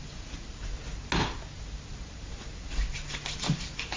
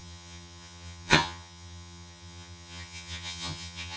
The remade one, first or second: second